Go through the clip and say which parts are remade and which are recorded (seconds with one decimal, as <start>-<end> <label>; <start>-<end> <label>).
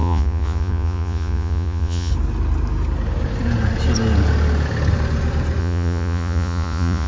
0.0-2.1 remade; 2.1-5.6 recorded; 5.6-7.1 remade